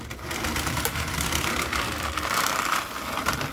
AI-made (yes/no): yes